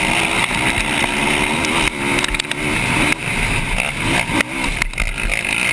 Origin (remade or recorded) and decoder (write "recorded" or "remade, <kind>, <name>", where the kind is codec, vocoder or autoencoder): recorded